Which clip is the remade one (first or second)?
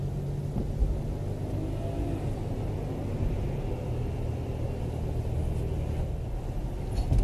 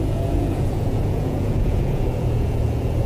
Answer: second